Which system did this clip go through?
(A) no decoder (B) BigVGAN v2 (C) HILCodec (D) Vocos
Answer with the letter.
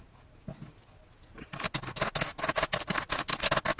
A